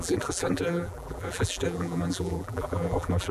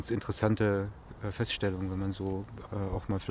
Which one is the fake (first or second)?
first